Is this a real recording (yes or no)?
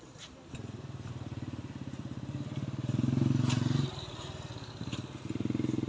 no